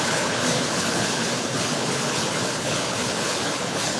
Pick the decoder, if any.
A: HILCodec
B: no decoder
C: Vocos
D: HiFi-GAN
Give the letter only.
A